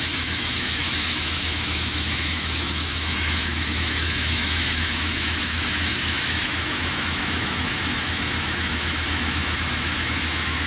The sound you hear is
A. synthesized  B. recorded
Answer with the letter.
A